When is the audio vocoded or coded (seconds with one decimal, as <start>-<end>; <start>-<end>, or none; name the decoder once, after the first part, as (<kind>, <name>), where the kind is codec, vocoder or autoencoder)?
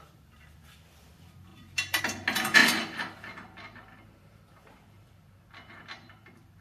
1.5-2.0 (vocoder, BigVGAN v2); 2.6-6.6